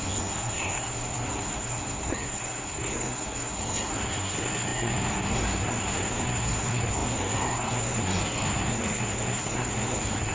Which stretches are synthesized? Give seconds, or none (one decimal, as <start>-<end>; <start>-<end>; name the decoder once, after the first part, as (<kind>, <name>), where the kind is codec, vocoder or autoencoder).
0.0-10.3 (codec, SNAC)